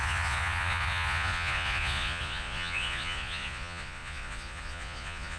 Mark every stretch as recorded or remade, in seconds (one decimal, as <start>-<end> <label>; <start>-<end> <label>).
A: 0.0-5.4 remade